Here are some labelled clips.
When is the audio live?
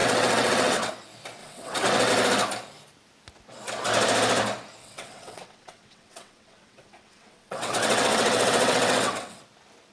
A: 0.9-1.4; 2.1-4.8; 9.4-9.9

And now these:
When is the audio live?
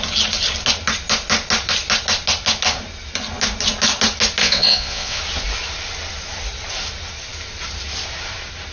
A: 0.0-4.4; 5.2-8.7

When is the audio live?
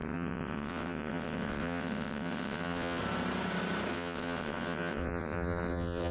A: 3.0-3.9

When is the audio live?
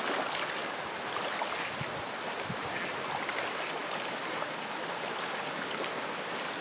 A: 0.0-6.6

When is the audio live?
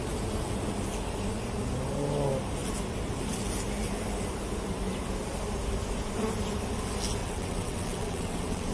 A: 0.0-7.2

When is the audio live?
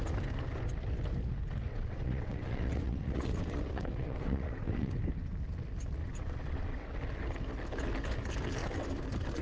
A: 0.0-1.7; 4.9-6.0; 7.0-9.4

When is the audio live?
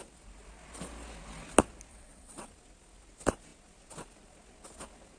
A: 0.0-1.9; 2.5-5.2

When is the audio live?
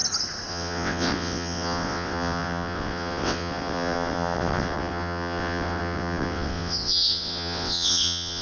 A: 0.0-0.5